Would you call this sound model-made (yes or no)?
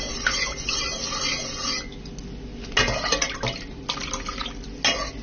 no